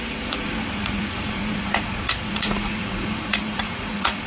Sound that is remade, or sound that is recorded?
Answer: remade